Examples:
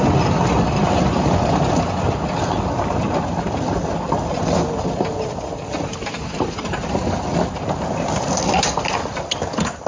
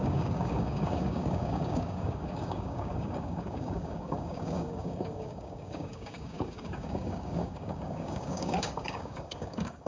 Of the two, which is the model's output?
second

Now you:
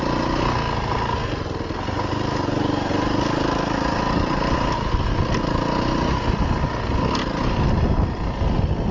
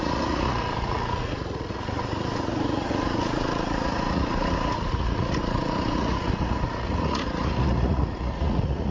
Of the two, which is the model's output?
second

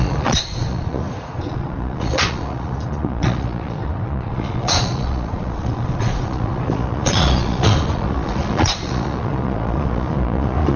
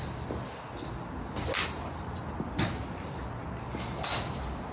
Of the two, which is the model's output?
first